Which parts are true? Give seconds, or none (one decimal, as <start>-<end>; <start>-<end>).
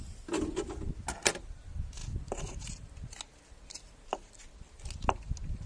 0.0-5.7